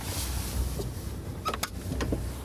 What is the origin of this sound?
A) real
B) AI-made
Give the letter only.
A